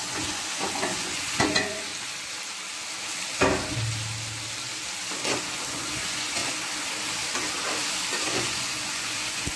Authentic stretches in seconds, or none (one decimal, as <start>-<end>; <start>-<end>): 1.9-5.7; 6.4-8.2

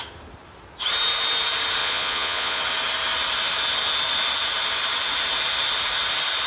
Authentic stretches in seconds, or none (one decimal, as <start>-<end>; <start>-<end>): 0.0-1.8; 2.6-6.5